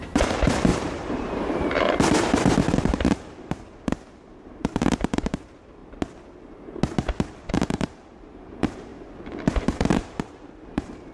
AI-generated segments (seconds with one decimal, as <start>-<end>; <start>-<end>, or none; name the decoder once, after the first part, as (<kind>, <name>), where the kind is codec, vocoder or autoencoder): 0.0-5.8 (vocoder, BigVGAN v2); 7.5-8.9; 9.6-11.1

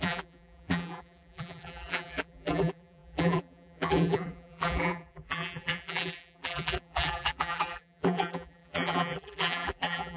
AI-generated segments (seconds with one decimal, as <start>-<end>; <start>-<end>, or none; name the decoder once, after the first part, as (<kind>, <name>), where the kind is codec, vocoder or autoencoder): 0.0-10.2 (vocoder, BigVGAN v2)

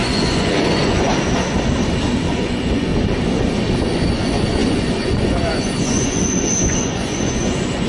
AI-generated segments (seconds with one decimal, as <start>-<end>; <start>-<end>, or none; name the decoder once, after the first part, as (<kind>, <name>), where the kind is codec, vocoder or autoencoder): 0.0-1.1 (vocoder, Vocos); 2.3-2.9; 3.8-7.9

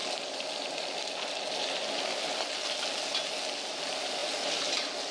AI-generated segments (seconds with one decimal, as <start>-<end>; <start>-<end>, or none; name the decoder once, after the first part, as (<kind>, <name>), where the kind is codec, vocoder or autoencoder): none

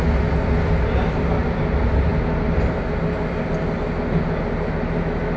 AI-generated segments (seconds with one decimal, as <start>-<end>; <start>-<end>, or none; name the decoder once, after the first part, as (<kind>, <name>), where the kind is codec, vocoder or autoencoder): none

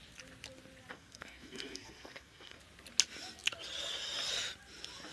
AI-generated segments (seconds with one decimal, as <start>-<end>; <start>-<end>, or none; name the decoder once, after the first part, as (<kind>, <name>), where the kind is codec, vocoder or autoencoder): 0.9-2.6 (codec, SNAC)

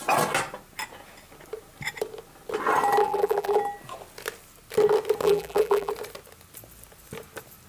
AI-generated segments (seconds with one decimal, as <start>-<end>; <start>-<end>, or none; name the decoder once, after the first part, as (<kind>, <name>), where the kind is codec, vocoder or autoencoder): 3.0-3.6 (vocoder, BigVGAN v2); 5.2-5.9

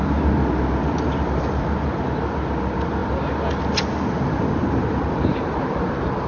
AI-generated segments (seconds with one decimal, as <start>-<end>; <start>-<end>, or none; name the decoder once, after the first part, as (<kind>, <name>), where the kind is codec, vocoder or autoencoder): none